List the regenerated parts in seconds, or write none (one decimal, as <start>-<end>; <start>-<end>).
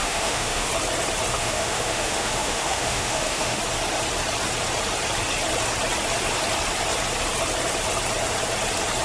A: 0.0-0.7; 1.3-3.6